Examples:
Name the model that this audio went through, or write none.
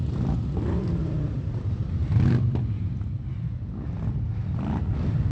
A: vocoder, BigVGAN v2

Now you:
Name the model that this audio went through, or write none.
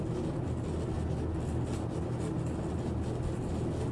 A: none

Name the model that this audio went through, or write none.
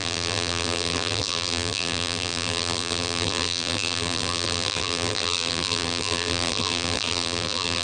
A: vocoder, BigVGAN v2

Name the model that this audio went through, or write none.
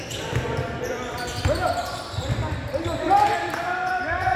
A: vocoder, BigVGAN v2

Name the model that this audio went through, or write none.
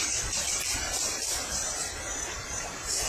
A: vocoder, BigVGAN v2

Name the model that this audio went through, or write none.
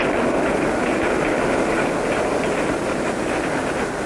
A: none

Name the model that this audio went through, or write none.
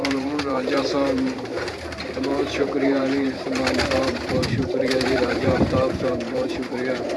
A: vocoder, BigVGAN v2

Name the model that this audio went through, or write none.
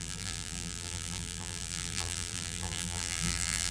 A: vocoder, BigVGAN v2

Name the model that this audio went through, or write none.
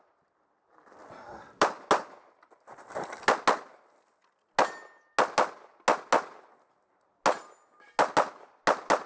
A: none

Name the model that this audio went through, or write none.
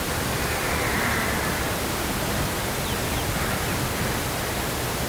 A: vocoder, BigVGAN v2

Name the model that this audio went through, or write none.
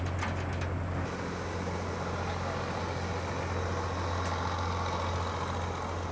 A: none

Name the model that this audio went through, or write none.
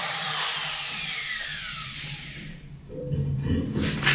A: vocoder, BigVGAN v2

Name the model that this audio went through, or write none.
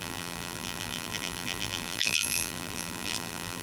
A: vocoder, BigVGAN v2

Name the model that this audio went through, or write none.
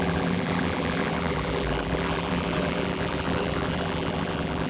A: vocoder, BigVGAN v2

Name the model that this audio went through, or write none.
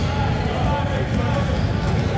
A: none